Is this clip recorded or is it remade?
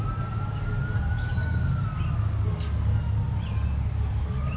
recorded